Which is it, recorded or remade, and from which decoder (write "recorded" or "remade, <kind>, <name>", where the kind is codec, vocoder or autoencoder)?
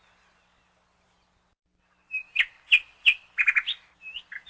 recorded